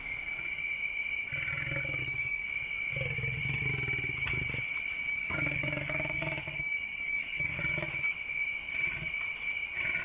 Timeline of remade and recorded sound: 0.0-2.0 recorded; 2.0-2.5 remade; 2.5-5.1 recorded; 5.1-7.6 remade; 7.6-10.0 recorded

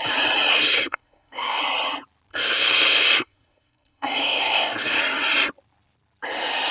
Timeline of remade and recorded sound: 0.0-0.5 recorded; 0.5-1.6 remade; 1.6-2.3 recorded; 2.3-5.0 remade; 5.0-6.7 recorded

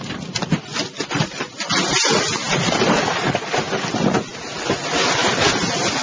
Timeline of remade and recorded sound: 0.0-6.0 recorded

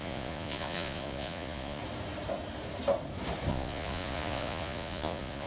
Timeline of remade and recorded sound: 0.0-1.8 remade; 1.8-3.5 recorded; 3.5-5.5 remade

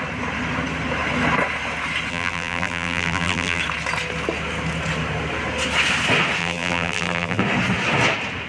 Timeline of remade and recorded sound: 0.0-2.1 recorded; 2.1-3.6 remade; 3.6-6.4 recorded; 6.4-7.4 remade; 7.4-8.5 recorded